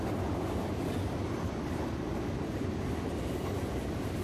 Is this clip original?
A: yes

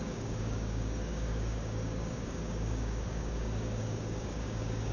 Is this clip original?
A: no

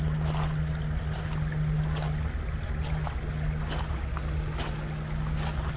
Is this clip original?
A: yes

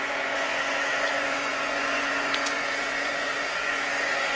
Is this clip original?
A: no